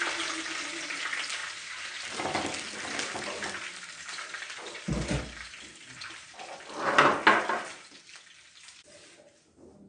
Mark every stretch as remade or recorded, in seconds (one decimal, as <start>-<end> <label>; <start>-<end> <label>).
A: 0.0-1.4 recorded; 1.4-2.1 remade; 2.1-9.9 recorded